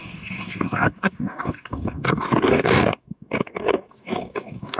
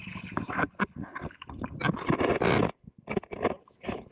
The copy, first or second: first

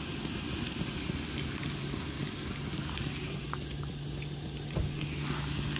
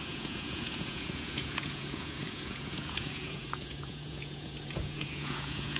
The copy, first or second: second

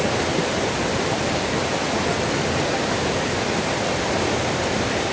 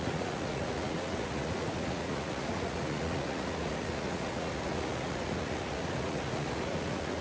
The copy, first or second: second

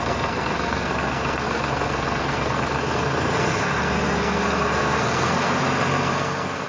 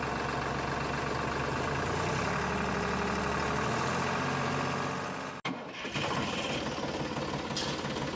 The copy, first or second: first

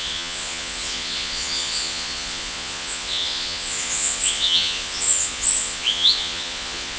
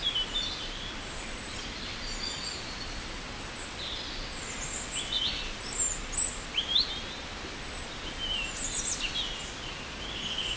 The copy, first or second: first